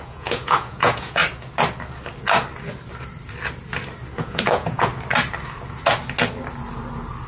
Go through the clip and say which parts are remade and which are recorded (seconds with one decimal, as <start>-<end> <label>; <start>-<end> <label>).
0.0-1.2 remade; 1.2-4.2 recorded; 4.2-4.9 remade; 4.9-7.3 recorded